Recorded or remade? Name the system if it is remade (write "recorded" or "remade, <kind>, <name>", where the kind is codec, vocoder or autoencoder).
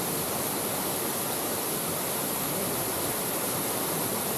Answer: recorded